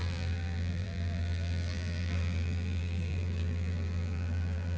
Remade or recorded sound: remade